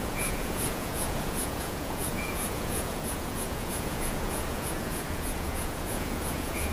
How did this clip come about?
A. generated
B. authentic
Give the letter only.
A